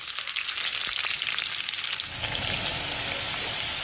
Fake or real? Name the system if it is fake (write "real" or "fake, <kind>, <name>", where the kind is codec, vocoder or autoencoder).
real